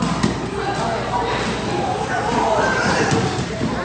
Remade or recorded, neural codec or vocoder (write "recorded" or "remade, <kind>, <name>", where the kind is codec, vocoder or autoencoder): recorded